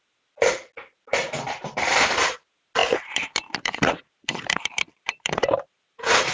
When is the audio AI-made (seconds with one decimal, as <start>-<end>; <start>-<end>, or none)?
1.2-1.9; 2.8-6.3